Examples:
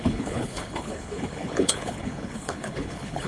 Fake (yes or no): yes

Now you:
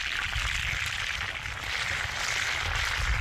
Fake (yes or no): no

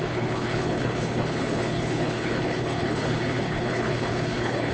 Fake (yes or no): yes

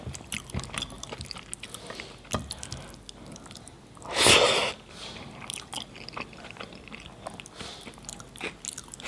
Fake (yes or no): no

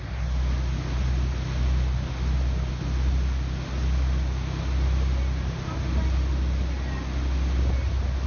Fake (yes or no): no